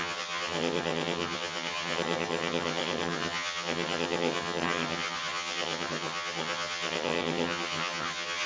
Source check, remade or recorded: remade